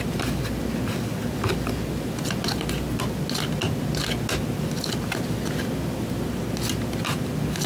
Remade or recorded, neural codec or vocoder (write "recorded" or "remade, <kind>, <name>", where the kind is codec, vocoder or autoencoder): recorded